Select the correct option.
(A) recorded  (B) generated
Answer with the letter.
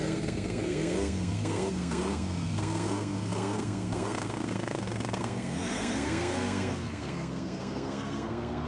B